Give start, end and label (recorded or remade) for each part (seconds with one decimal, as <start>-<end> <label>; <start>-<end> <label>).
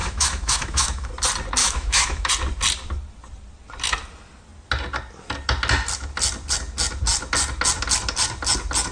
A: 0.0-1.1 remade; 1.1-1.6 recorded; 1.6-2.3 remade; 2.3-8.9 recorded